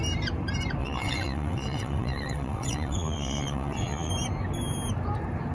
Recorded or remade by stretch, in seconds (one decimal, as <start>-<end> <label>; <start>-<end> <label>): 0.0-0.8 recorded; 0.8-4.1 remade; 4.1-5.5 recorded